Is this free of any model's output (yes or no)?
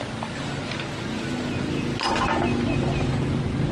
yes